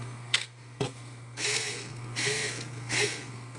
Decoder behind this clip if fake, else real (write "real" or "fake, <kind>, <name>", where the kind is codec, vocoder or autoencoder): fake, codec, SNAC